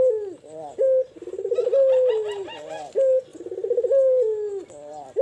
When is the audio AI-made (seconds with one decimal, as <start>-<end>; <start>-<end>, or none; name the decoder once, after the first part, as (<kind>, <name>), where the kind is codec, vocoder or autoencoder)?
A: none

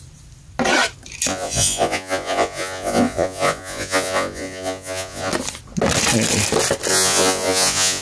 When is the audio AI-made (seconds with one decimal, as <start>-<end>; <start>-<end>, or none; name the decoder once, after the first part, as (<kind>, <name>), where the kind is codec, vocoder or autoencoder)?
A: 1.3-5.3 (vocoder, Vocos); 6.9-8.0

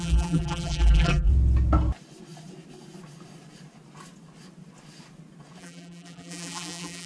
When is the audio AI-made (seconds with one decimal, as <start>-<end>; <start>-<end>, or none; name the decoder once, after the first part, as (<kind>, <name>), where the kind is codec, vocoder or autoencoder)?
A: 0.0-1.3 (vocoder, BigVGAN v2); 5.6-7.1

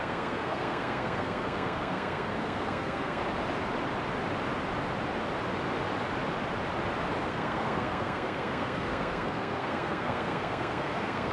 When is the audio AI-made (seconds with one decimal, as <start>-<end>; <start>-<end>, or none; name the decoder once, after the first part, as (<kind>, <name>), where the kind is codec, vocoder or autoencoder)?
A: 0.0-3.2 (codec, SNAC); 7.2-11.3